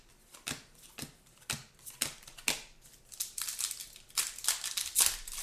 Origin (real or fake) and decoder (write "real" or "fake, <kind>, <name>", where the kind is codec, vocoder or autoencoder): real